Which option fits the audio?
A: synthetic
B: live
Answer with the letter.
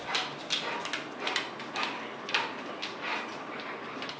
B